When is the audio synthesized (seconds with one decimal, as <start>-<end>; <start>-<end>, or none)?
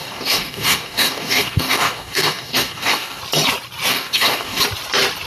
0.0-3.2; 3.9-4.6